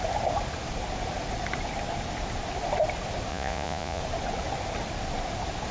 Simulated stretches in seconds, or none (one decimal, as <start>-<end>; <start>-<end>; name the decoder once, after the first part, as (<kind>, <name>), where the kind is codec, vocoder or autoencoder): 3.3-4.0 (vocoder, Vocos)